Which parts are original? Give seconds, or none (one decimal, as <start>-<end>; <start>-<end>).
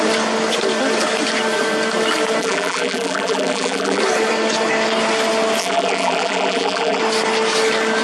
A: 0.0-2.4; 4.0-5.6; 7.0-8.0